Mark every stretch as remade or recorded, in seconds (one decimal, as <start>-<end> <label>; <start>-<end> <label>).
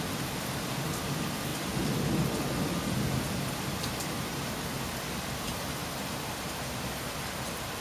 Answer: 0.0-5.8 recorded; 5.8-6.8 remade; 6.8-7.8 recorded